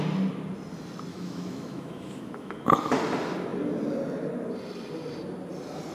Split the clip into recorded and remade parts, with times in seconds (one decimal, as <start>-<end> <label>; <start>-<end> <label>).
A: 0.0-1.1 recorded; 1.1-2.9 remade; 2.9-5.9 recorded